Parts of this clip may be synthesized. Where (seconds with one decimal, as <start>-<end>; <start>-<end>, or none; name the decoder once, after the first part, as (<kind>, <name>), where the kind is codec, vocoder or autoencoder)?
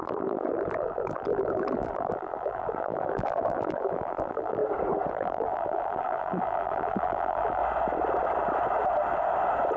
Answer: 0.0-4.6 (vocoder, BigVGAN v2); 5.1-7.6